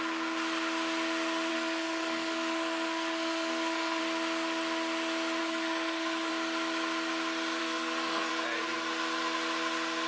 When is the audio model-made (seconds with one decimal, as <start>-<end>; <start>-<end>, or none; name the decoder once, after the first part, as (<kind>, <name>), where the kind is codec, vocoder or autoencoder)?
1.5-4.0 (codec, SNAC); 5.4-6.3; 7.6-8.3